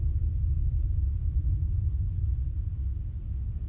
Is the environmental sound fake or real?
real